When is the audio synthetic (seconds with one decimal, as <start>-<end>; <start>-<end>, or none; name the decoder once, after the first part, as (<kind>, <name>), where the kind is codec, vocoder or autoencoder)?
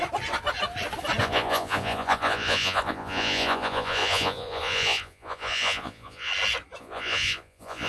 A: 1.2-6.3 (vocoder, Vocos); 6.8-7.9